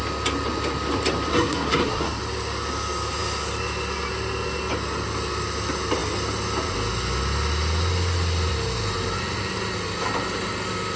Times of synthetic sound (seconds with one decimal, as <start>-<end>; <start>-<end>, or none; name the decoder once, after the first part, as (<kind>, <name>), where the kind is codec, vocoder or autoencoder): 1.3-2.2 (codec, SNAC)